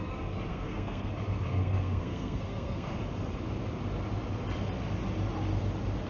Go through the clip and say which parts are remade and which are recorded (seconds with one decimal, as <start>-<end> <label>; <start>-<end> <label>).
0.0-0.5 recorded; 0.5-1.1 remade; 1.1-1.5 recorded; 1.5-3.0 remade; 3.0-6.1 recorded